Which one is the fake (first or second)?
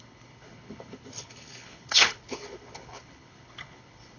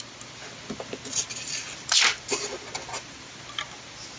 first